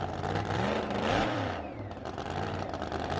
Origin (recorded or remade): remade